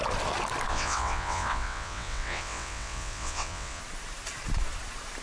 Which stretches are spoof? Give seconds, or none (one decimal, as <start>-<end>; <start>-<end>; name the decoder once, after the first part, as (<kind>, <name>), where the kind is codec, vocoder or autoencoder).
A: 0.7-3.8 (vocoder, WaveNeXt)